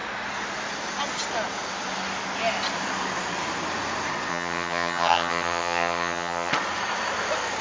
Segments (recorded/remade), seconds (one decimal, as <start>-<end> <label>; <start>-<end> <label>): 0.0-4.3 recorded; 4.3-6.5 remade; 6.5-7.6 recorded